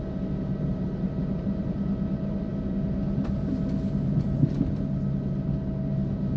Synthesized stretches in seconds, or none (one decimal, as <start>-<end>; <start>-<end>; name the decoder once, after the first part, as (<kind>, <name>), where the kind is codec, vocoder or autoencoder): none